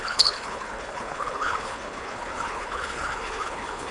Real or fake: fake